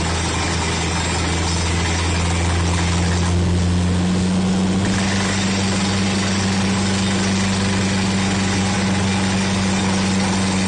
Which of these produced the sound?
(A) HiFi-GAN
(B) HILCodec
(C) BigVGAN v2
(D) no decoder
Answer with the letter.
D